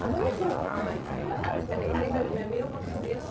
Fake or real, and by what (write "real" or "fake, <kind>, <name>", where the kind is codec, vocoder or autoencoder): fake, vocoder, Vocos